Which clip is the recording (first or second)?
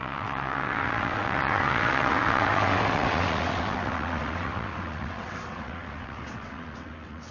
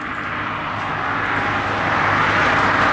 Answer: second